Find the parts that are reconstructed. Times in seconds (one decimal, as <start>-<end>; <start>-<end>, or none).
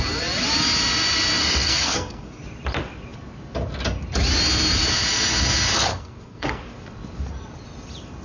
1.4-2.4; 5.9-6.6